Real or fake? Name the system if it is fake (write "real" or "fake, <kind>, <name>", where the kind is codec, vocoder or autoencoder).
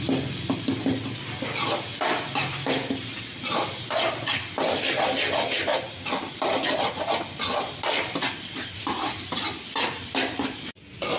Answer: real